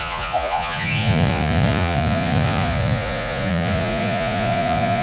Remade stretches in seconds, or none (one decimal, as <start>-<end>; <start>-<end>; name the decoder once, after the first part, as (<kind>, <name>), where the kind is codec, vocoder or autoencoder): 0.0-5.0 (vocoder, Vocos)